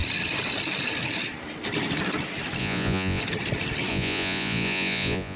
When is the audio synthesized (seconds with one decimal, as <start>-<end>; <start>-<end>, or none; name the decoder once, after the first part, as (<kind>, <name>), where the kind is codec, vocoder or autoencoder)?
2.6-3.2 (vocoder, Vocos); 3.9-5.4